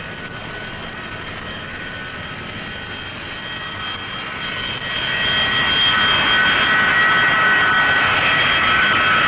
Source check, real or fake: real